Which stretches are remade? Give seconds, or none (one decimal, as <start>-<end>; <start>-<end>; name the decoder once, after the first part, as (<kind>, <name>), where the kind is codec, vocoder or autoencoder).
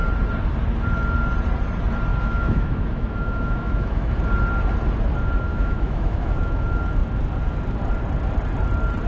2.1-4.1 (autoencoder, DAC-VAE); 5.5-6.6